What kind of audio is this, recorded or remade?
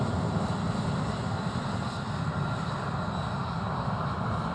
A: recorded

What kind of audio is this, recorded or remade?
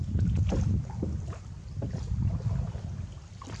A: recorded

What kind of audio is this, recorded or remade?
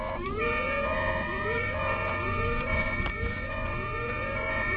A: remade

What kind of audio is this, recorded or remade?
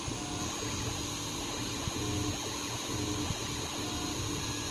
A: recorded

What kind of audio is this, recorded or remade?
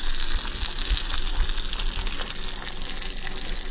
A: recorded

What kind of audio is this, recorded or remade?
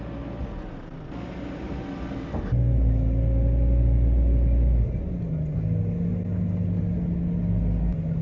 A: recorded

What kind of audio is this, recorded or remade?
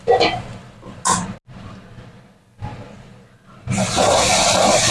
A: recorded